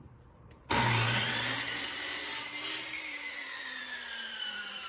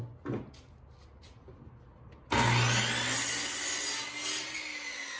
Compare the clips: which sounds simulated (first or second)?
first